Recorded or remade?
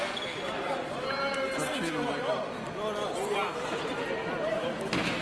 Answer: recorded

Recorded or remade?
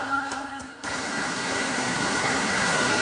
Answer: remade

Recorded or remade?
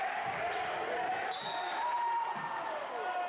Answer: recorded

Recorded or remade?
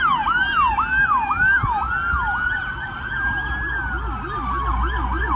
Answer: recorded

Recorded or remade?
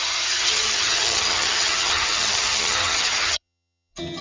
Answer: remade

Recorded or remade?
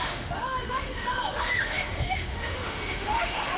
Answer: remade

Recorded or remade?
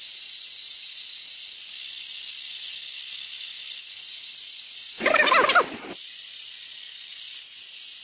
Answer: recorded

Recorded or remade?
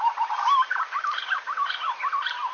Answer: recorded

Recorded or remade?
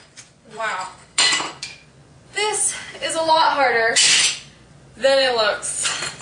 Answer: remade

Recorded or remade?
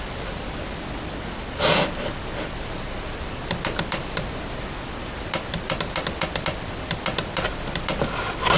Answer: recorded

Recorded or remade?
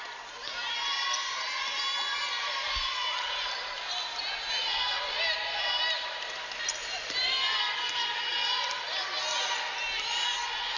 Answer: recorded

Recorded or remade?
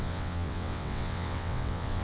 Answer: remade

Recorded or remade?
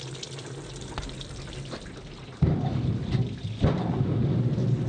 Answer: recorded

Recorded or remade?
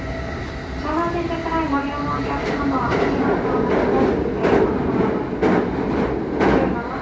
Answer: recorded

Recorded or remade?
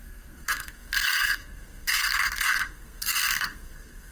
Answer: remade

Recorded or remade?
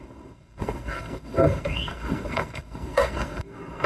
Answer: remade